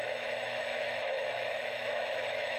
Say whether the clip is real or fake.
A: fake